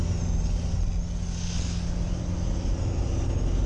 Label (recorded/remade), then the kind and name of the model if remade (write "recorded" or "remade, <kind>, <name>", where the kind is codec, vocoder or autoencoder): recorded